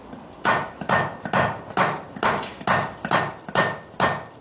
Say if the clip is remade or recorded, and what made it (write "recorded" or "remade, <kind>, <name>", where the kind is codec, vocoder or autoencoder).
recorded